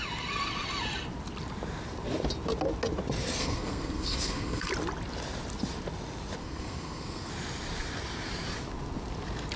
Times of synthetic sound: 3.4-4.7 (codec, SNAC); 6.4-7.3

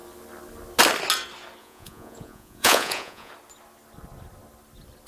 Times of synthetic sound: 1.6-3.3 (vocoder, Vocos)

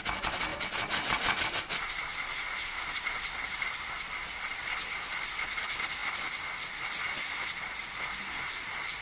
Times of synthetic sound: none

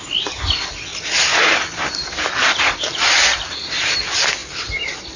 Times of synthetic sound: none

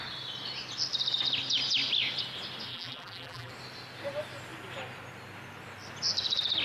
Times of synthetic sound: 2.7-3.5 (vocoder, BigVGAN v2)

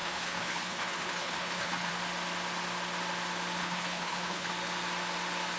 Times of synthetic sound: 0.0-1.9 (codec, HILCodec); 3.6-4.5

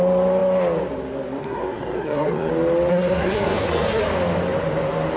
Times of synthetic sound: 1.4-2.5 (codec, SNAC); 2.9-4.0

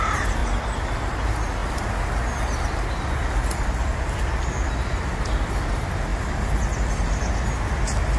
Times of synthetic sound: none